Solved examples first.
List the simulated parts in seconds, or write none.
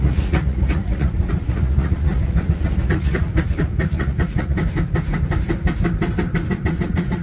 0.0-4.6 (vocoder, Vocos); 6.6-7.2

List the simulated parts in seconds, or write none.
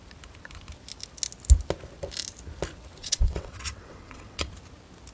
3.0-4.5 (vocoder, WaveNeXt)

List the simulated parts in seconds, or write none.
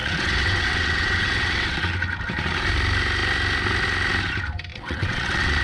0.0-1.9 (vocoder, WaveNeXt); 4.7-5.6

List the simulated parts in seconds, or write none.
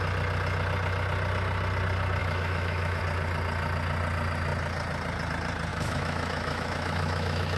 2.2-3.0 (autoencoder, DAC-VAE); 5.7-7.6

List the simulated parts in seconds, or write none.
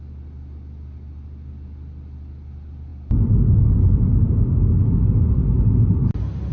none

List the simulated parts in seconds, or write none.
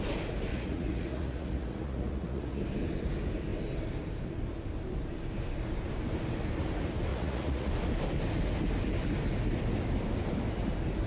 0.5-2.6 (vocoder, Vocos); 7.1-7.7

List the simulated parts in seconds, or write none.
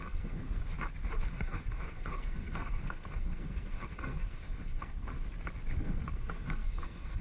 0.0-0.6 (codec, SNAC); 1.3-5.1; 5.8-7.2